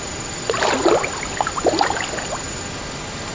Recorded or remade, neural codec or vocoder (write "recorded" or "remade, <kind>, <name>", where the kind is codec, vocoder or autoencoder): recorded